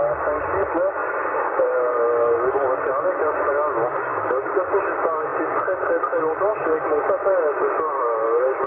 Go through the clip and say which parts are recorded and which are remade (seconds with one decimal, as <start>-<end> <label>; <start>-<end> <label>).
0.0-8.7 recorded